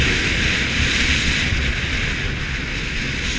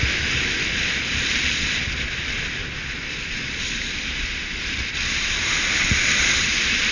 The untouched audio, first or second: first